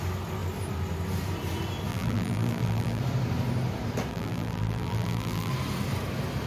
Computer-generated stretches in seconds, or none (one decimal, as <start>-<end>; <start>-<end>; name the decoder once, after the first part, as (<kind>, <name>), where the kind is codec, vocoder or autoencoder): 1.9-3.0 (vocoder, BigVGAN v2); 4.1-5.5